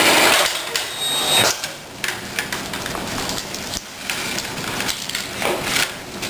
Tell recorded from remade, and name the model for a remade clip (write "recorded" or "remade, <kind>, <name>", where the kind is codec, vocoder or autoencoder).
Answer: recorded